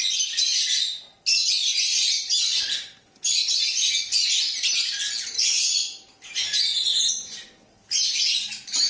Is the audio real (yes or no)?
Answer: yes